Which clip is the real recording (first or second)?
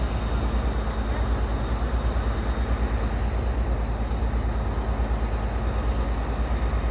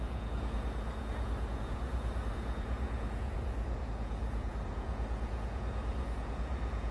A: first